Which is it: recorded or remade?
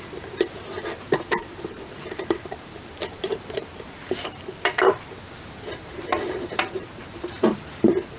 remade